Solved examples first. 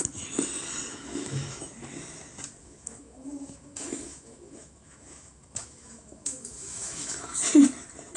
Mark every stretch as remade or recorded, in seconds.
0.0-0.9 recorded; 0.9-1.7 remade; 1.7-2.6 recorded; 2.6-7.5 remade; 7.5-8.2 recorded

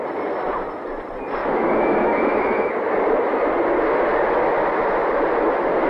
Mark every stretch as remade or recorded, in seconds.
0.0-1.4 recorded; 1.4-2.7 remade; 2.7-5.9 recorded

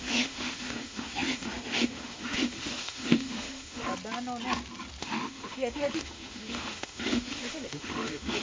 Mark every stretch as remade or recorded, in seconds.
0.0-3.9 remade; 3.9-5.0 recorded; 5.0-8.4 remade

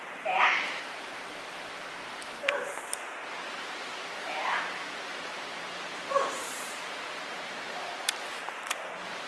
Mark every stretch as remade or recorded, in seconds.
0.0-2.7 remade; 2.7-3.6 recorded; 3.6-9.3 remade

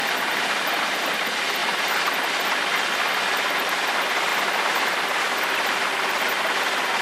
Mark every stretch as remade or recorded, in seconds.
0.0-7.0 recorded

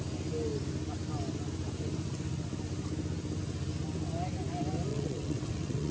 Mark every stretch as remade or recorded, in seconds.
0.0-4.9 recorded; 4.9-5.9 remade

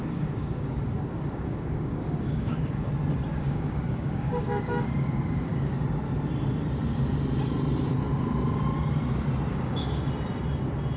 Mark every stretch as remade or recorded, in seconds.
0.0-2.9 remade; 2.9-3.3 recorded; 3.3-6.0 remade; 6.0-9.5 recorded; 9.5-10.0 remade; 10.0-11.0 recorded

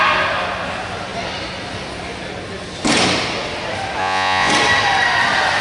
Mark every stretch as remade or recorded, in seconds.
0.0-4.0 recorded; 4.0-4.5 remade; 4.5-5.6 recorded